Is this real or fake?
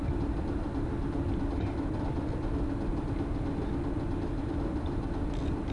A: real